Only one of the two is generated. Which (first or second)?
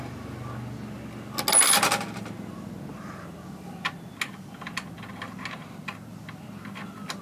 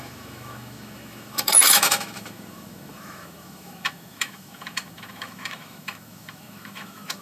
second